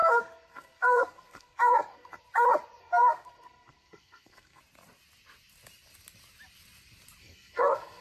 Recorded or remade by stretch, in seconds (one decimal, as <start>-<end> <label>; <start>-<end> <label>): 0.0-2.2 remade; 2.2-2.8 recorded; 2.8-4.6 remade; 4.6-7.2 recorded; 7.2-8.0 remade